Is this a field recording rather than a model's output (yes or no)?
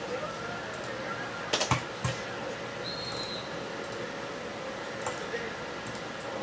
yes